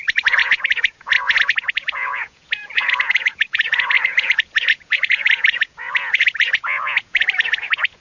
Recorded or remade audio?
remade